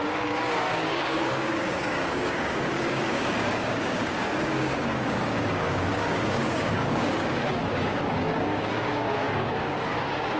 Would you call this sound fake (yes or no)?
yes